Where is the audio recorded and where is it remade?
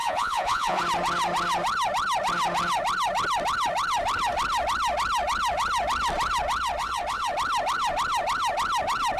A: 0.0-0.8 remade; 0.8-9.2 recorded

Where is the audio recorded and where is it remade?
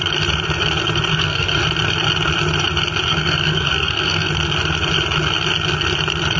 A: 0.0-1.1 recorded; 1.1-1.6 remade; 1.6-3.1 recorded; 3.1-4.3 remade; 4.3-6.4 recorded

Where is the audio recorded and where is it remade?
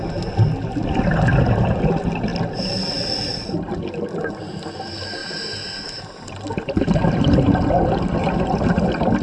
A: 0.0-9.2 recorded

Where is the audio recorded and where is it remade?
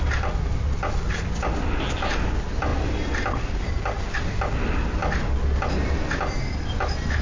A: 0.0-7.2 recorded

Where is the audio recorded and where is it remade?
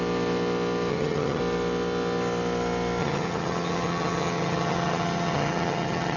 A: 0.0-0.9 recorded; 0.9-1.4 remade; 1.4-3.0 recorded; 3.0-6.2 remade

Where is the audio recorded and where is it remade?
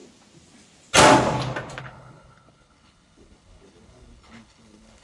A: 0.0-1.8 recorded; 1.8-5.0 remade